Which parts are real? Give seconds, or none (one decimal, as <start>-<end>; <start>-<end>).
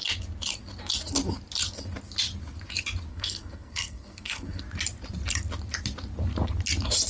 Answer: 0.0-3.1; 4.6-7.1